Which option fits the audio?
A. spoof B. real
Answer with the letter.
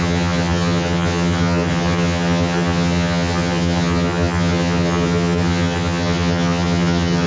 A